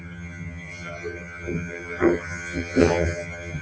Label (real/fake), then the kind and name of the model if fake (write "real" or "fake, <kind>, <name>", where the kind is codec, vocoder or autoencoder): fake, vocoder, HiFi-GAN